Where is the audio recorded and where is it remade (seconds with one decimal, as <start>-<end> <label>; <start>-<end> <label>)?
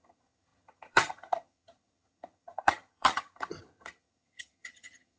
0.0-5.2 remade